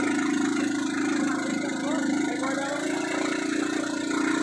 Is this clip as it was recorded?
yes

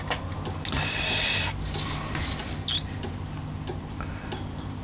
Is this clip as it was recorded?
yes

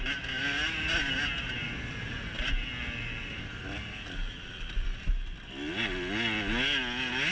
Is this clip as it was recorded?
yes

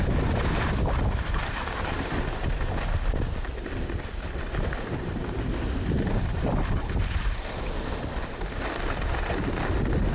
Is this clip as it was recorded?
yes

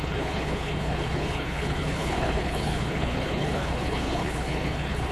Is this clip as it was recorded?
no